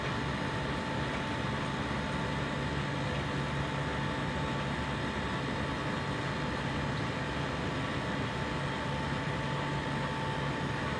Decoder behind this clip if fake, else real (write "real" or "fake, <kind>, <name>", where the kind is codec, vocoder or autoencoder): real